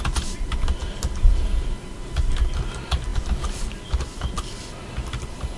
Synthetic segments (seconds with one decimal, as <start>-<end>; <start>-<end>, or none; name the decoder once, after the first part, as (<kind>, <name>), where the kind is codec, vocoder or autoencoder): none